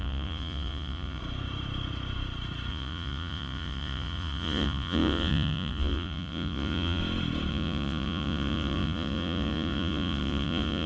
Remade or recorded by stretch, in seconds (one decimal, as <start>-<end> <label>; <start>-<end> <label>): 0.0-1.2 remade; 1.2-2.7 recorded; 2.7-7.0 remade; 7.0-7.5 recorded; 7.5-10.9 remade